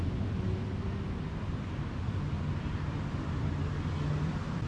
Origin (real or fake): real